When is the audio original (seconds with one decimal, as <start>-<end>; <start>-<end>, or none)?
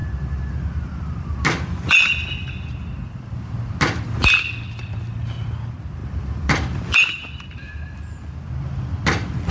0.0-9.5